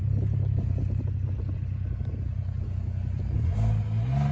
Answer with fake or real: real